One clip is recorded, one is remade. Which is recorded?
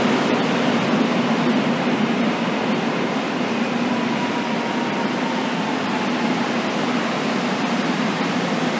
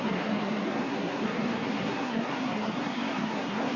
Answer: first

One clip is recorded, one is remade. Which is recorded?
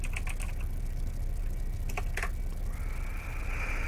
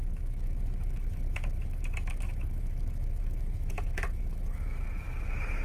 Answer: first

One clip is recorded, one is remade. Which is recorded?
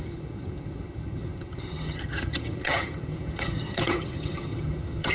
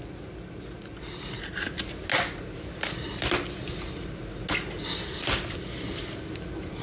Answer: second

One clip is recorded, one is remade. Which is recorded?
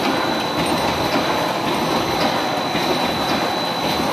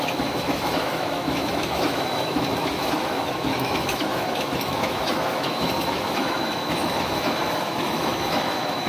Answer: first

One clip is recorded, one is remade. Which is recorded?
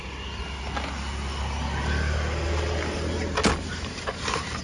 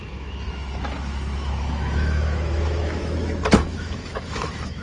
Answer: first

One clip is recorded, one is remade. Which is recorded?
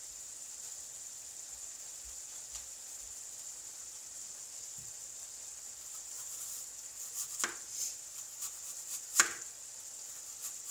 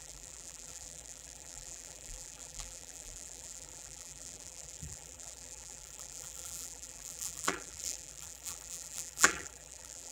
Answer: first